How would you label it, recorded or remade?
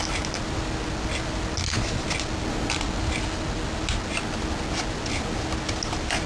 recorded